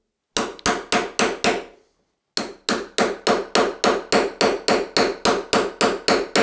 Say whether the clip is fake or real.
real